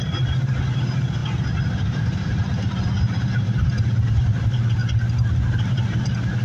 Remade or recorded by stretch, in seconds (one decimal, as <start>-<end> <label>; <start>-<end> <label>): 0.0-1.2 remade; 1.2-1.8 recorded; 1.8-4.8 remade; 4.8-5.5 recorded; 5.5-6.4 remade